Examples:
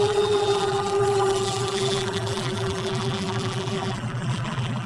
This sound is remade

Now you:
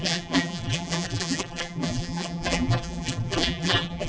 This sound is remade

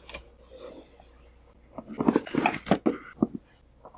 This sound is recorded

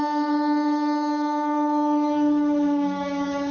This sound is remade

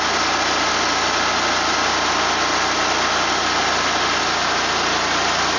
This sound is recorded